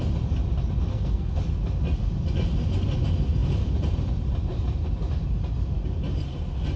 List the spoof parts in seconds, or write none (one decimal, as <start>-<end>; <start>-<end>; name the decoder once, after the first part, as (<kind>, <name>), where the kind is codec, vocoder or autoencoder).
0.9-1.4 (codec, SNAC)